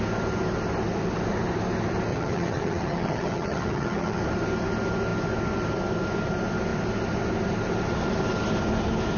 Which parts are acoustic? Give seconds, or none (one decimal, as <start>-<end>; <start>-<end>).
0.0-2.1; 4.2-9.2